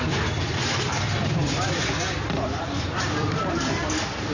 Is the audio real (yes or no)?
no